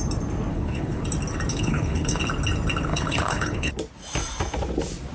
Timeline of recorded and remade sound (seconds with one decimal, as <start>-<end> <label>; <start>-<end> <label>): 0.0-0.5 recorded; 0.5-1.0 remade; 1.0-1.5 recorded; 1.5-2.2 remade; 2.2-2.9 recorded; 2.9-3.7 remade; 3.7-5.1 recorded